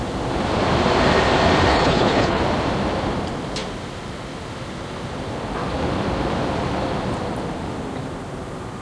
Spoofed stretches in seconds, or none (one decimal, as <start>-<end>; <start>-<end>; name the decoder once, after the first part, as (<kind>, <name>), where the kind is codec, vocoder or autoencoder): 1.7-2.4 (codec, HILCodec)